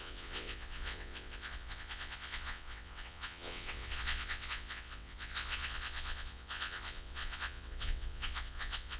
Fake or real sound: fake